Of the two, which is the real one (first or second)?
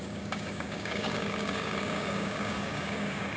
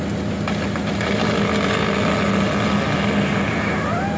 second